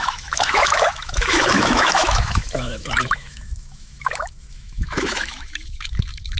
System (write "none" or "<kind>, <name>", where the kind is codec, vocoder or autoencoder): autoencoder, DAC-VAE